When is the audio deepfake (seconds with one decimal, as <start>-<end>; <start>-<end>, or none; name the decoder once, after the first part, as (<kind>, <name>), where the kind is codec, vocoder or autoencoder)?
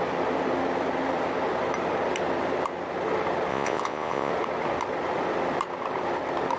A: 3.5-4.3 (vocoder, Vocos)